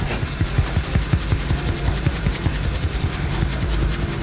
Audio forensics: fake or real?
real